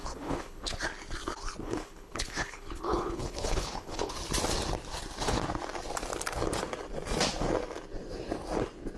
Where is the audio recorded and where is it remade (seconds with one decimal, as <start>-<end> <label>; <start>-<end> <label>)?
0.0-0.8 remade; 0.8-1.6 recorded; 1.6-4.1 remade; 4.1-9.0 recorded